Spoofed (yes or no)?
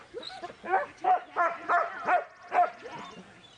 no